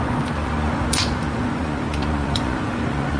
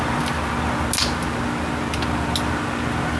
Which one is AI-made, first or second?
first